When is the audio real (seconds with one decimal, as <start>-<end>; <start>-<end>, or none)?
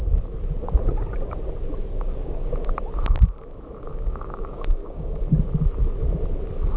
0.0-1.9; 2.5-3.9; 5.2-6.8